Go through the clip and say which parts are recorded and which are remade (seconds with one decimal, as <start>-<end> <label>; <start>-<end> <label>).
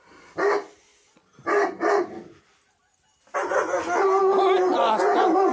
0.0-5.5 recorded